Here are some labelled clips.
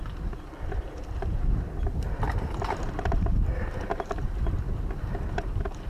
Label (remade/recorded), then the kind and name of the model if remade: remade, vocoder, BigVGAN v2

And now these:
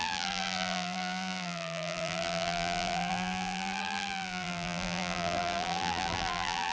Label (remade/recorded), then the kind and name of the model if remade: remade, vocoder, BigVGAN v2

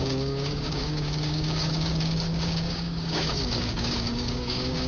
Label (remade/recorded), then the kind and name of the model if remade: remade, codec, DAC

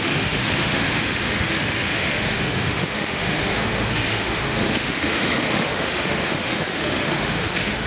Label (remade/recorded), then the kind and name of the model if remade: remade, autoencoder, DAC-VAE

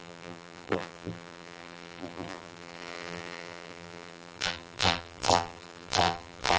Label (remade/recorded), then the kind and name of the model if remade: remade, vocoder, BigVGAN v2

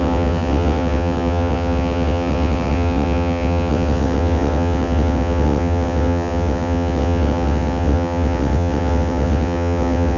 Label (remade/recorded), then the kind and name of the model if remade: remade, vocoder, WaveNeXt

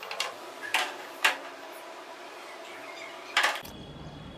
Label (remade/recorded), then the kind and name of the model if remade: remade, vocoder, BigVGAN v2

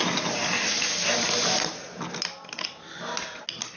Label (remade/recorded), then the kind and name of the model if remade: recorded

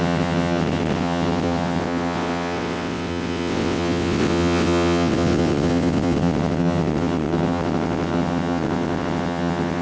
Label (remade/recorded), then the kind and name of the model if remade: remade, vocoder, WaveNeXt